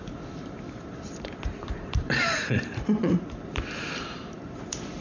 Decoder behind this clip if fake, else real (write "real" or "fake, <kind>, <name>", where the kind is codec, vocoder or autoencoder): fake, vocoder, BigVGAN v2